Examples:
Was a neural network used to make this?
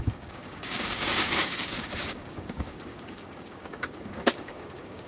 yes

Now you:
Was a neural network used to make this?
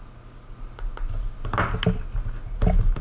no